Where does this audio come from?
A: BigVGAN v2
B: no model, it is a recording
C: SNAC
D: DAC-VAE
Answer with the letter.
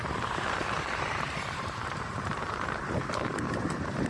A